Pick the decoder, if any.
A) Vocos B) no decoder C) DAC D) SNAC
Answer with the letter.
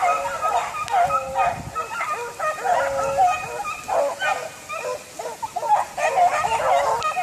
B